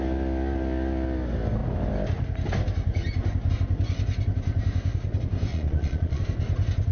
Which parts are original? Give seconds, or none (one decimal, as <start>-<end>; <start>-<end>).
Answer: 0.0-5.5; 6.2-6.9